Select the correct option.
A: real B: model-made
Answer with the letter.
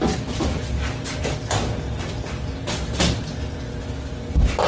A